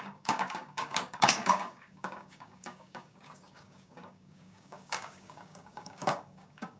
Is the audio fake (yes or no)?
yes